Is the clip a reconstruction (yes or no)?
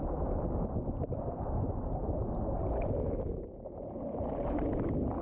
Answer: no